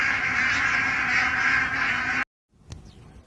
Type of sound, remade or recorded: recorded